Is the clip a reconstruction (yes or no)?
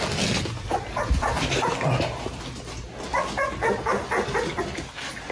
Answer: no